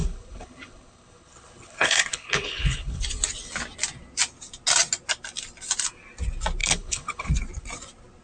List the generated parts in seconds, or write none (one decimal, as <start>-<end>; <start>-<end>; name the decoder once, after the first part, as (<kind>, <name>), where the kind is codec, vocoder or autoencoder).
0.0-3.0 (codec, HILCodec); 6.6-7.3